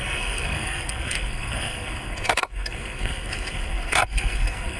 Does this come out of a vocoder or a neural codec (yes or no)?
yes